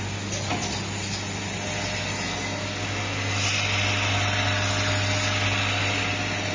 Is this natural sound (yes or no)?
yes